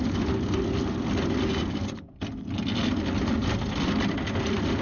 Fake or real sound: real